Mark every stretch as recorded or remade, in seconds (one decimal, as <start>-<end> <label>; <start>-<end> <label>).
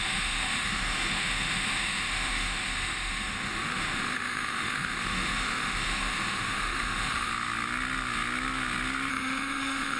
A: 0.0-7.3 remade; 7.3-9.1 recorded; 9.1-10.0 remade